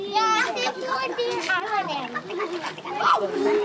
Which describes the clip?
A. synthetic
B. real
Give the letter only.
B